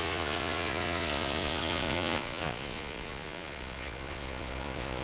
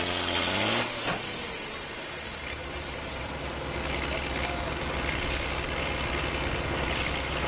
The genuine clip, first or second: second